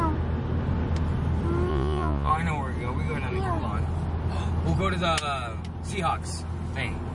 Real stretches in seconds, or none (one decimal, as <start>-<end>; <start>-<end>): 0.0-1.7; 2.3-7.1